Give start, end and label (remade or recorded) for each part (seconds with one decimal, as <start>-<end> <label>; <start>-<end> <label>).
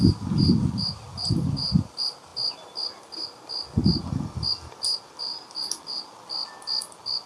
0.0-7.3 recorded